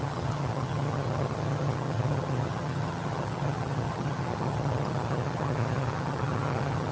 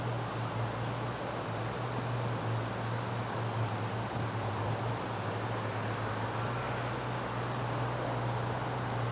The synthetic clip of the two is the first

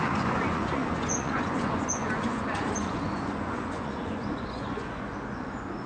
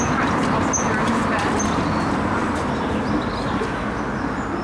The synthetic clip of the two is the first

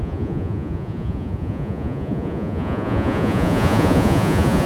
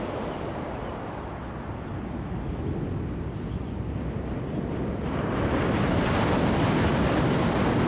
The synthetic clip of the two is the first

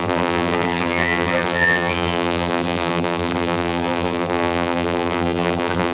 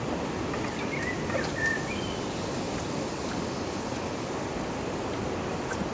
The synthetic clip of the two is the first